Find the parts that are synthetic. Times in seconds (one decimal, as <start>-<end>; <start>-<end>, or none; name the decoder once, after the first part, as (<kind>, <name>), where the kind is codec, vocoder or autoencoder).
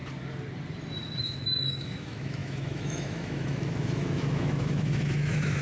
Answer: 1.2-5.6 (autoencoder, DAC-VAE)